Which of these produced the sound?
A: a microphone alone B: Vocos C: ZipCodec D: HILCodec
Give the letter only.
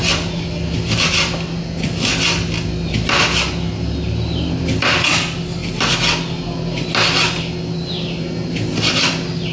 A